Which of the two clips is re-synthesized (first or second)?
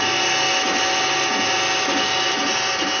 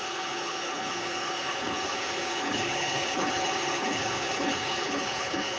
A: second